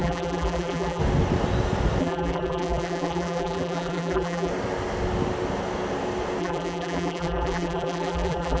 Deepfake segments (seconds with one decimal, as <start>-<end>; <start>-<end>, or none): 0.0-1.0; 2.0-4.5; 6.4-8.6